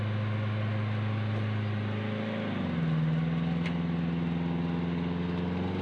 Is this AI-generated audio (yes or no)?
no